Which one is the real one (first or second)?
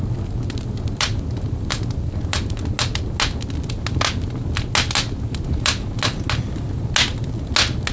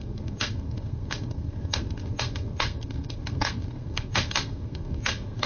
first